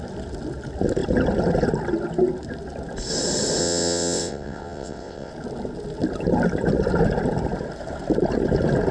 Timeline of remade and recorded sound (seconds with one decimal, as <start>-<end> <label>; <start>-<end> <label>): 0.0-3.6 recorded; 3.6-5.3 remade; 5.3-8.9 recorded

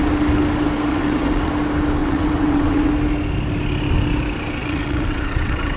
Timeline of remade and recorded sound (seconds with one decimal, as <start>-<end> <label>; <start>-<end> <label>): 0.0-0.9 recorded; 0.9-1.5 remade; 1.5-2.0 recorded; 2.0-2.9 remade; 2.9-4.6 recorded; 4.6-5.8 remade

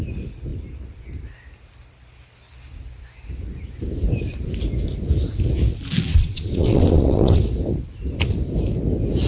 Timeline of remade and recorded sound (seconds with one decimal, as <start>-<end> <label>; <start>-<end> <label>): 0.0-6.1 recorded; 6.1-7.4 remade; 7.4-9.3 recorded

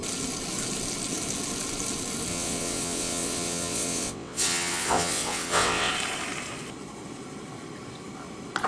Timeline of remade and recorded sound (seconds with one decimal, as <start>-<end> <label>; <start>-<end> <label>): 0.0-2.3 recorded; 2.3-5.9 remade; 5.9-8.7 recorded

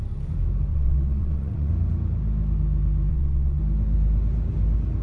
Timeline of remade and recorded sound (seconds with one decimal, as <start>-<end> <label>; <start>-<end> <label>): 0.0-0.7 recorded; 0.7-1.7 remade; 1.7-3.1 recorded; 3.1-3.6 remade; 3.6-5.0 recorded

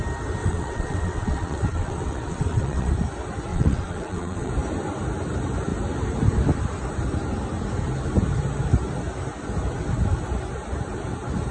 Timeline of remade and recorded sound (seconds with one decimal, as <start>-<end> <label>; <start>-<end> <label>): 0.0-0.4 recorded; 0.4-2.9 remade; 2.9-3.5 recorded; 3.5-4.5 remade; 4.5-11.5 recorded

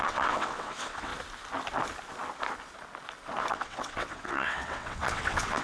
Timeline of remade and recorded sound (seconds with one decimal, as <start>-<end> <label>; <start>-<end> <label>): 0.0-1.1 remade; 1.1-3.5 recorded; 3.5-5.6 remade